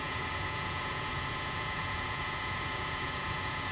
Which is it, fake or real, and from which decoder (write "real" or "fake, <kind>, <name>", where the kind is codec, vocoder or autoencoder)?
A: fake, vocoder, Vocos